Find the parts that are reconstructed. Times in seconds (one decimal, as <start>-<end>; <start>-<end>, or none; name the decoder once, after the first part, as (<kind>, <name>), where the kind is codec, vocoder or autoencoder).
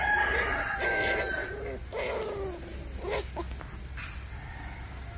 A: none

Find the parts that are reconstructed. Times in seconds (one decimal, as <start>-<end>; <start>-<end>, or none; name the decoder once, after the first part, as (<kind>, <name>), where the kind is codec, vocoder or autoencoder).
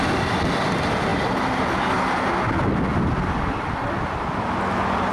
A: none